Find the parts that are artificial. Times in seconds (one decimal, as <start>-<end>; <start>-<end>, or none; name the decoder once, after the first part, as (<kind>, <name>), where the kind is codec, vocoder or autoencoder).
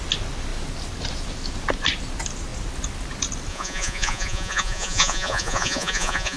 3.5-6.4 (vocoder, Vocos)